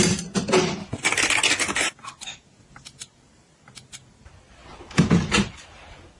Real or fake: real